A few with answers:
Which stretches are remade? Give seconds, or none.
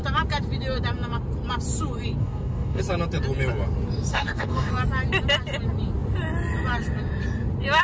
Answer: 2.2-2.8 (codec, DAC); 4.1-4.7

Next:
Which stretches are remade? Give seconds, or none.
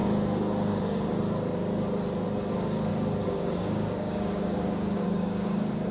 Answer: 0.0-1.2 (codec, DAC); 2.9-5.9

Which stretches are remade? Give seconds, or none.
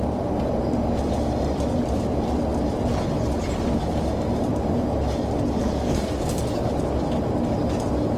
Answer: 5.6-6.7 (codec, DAC)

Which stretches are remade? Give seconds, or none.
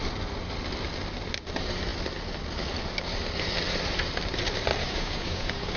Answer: 4.8-5.8 (codec, DAC)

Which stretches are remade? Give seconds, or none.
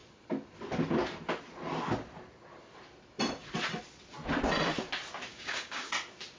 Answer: 5.3-5.9 (codec, DAC)